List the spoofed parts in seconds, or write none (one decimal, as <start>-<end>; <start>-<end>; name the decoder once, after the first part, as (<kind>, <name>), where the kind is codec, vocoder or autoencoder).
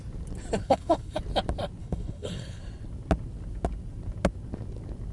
0.6-1.2 (codec, HILCodec); 1.8-2.6